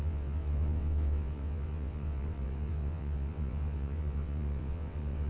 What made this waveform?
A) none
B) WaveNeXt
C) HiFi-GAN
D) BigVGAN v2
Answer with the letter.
B